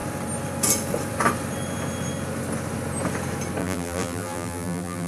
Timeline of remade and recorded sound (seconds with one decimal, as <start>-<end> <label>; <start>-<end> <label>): 0.0-3.6 recorded; 3.6-5.1 remade